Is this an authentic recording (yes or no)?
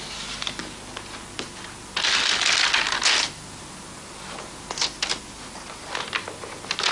yes